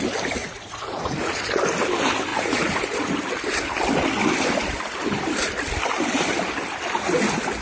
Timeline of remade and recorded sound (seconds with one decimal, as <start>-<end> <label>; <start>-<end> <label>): 0.0-0.4 recorded; 0.4-1.4 remade; 1.4-2.3 recorded; 2.3-3.1 remade; 3.1-7.6 recorded